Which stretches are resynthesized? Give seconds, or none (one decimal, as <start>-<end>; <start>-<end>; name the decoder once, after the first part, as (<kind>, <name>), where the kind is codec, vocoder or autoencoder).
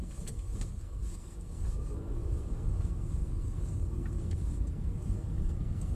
0.0-5.9 (codec, SNAC)